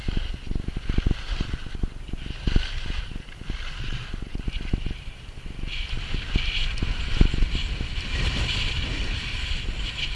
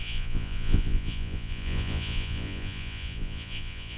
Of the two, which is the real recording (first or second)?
first